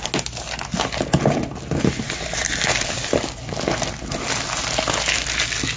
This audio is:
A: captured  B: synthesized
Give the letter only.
A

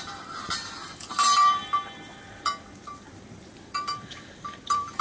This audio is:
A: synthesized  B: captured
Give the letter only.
A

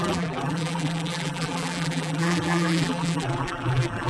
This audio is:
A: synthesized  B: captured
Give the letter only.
A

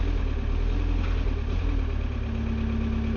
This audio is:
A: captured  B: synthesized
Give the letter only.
A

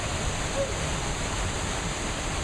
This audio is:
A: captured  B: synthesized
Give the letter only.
A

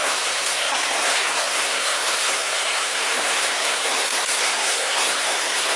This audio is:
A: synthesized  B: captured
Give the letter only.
A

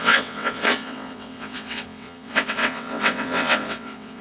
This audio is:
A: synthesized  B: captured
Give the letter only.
A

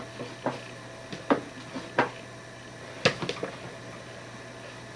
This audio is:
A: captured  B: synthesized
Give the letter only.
A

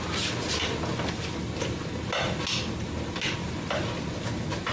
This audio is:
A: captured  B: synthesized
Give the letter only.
A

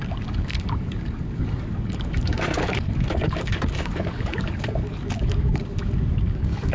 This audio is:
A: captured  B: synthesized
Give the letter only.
B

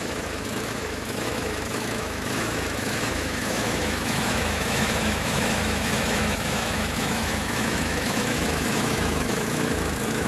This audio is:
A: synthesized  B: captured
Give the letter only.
A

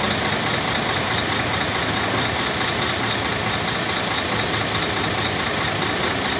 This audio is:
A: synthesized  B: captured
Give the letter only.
B